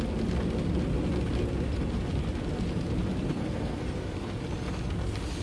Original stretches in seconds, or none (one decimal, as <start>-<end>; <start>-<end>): 0.0-3.3; 4.3-5.4